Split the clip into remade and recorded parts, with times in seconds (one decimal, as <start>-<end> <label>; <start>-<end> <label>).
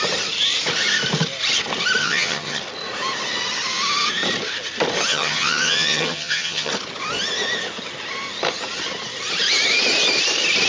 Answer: 0.0-2.0 recorded; 2.0-2.6 remade; 2.6-5.1 recorded; 5.1-6.7 remade; 6.7-10.7 recorded